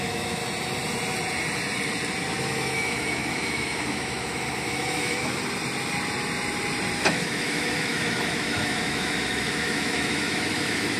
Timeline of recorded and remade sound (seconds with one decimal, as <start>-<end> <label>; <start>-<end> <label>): 0.0-0.4 remade; 0.4-2.4 recorded; 2.4-5.4 remade; 5.4-7.1 recorded; 7.1-11.0 remade